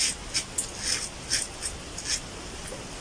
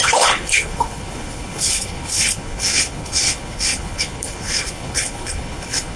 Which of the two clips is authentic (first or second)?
first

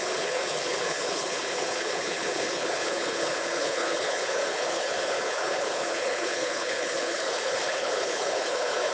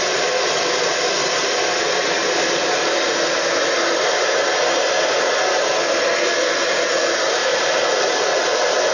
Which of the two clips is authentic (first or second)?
second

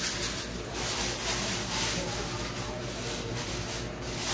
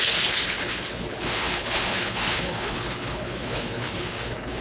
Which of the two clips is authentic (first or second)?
first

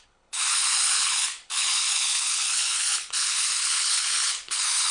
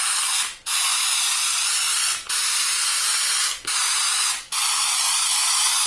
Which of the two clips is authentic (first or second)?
second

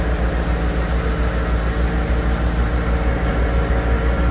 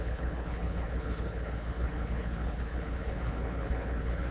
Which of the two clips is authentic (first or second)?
first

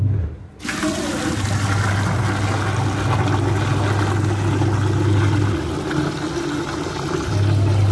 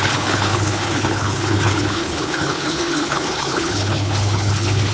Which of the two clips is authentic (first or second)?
first